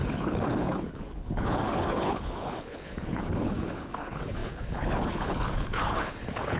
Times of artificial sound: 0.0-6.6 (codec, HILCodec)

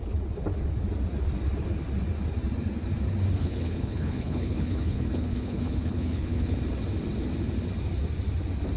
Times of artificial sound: 3.4-6.5 (codec, HILCodec)

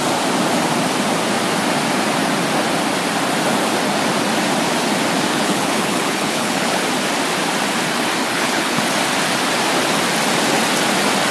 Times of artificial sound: 5.3-6.8 (codec, HILCodec); 8.2-8.8